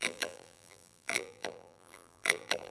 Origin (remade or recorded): remade